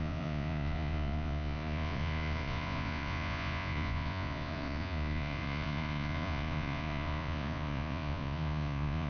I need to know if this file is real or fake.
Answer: fake